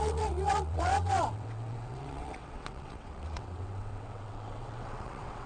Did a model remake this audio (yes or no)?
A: yes